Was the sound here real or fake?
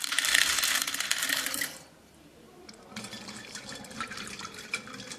fake